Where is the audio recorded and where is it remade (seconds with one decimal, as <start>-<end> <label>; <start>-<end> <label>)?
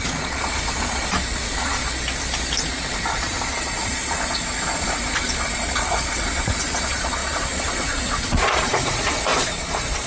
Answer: 0.0-1.8 remade; 1.8-2.6 recorded; 2.6-10.1 remade